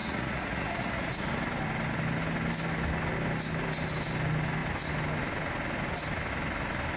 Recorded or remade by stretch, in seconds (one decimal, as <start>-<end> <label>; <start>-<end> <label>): 0.0-1.1 remade; 1.1-7.0 recorded